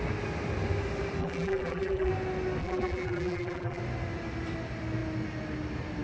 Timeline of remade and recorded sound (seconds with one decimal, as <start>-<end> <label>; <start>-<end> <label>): 0.0-1.2 recorded; 1.2-2.1 remade; 2.1-2.6 recorded; 2.6-3.8 remade; 3.8-6.0 recorded